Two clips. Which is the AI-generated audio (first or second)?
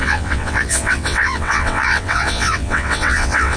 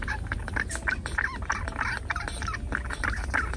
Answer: first